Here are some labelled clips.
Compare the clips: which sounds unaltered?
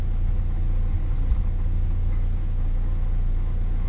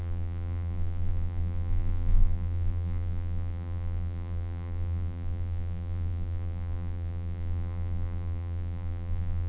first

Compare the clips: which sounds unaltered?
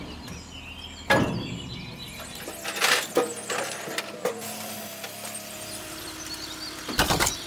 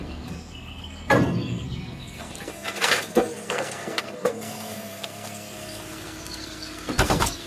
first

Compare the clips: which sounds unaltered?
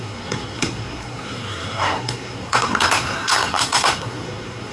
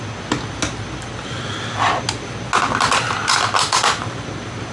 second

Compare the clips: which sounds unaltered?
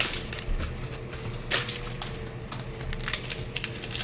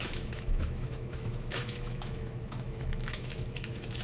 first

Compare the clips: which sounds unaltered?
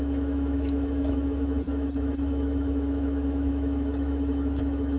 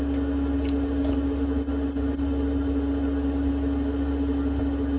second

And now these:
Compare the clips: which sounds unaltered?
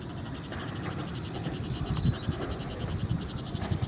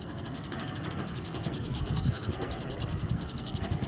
first